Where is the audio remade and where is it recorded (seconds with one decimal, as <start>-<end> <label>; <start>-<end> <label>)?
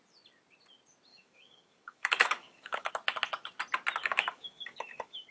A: 0.0-1.1 recorded; 1.1-2.9 remade; 2.9-4.0 recorded; 4.0-5.3 remade